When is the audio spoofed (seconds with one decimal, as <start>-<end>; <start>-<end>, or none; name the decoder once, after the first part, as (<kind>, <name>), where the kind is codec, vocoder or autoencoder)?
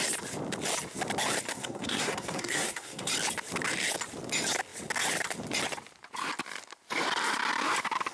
1.5-3.1 (codec, SNAC)